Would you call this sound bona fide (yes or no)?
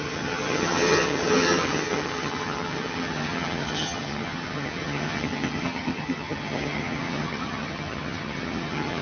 no